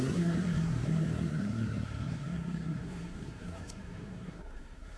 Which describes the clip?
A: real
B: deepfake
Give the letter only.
B